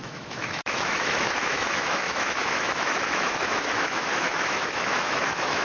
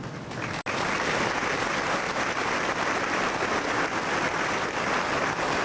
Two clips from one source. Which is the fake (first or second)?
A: first